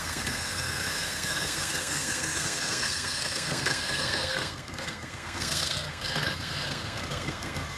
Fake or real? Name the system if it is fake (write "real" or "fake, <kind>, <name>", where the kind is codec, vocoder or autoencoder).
fake, codec, SNAC